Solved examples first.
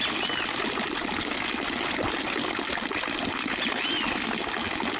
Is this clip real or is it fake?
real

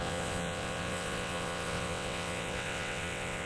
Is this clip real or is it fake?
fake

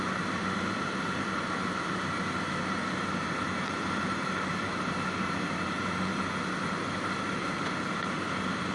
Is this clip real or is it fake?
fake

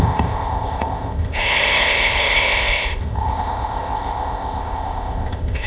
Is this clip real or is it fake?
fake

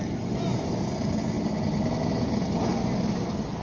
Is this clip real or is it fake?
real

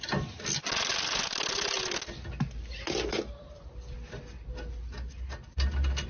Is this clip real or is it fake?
real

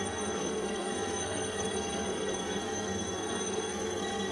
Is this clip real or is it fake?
fake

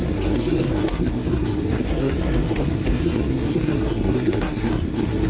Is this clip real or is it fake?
fake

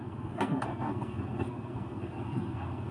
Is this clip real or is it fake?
fake